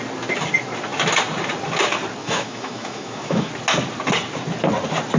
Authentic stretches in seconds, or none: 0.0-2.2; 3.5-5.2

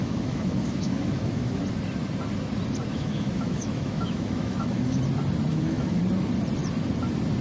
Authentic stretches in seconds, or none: 1.6-2.9; 5.0-5.5; 6.0-7.4